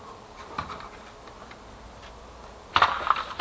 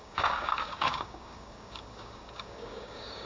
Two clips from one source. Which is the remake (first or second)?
second